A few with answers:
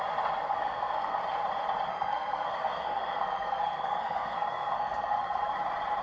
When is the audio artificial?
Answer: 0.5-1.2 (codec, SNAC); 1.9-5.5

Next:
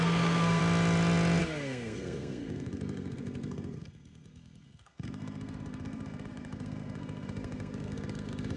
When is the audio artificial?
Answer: 0.0-0.6 (codec, SNAC); 1.4-8.6

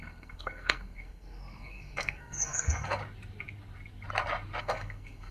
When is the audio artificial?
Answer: 0.0-3.0 (codec, SNAC); 4.6-5.3